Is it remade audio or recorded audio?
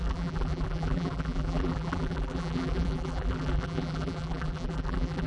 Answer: remade